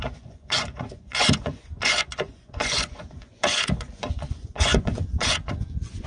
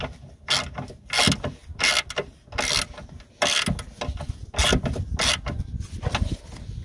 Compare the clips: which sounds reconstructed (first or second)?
first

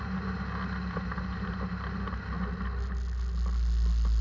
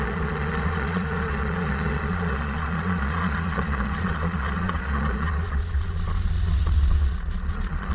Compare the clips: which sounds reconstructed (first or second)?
second